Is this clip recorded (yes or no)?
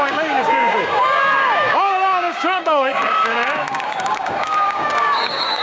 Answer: no